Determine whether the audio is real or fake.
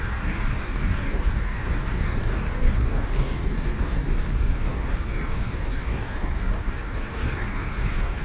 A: fake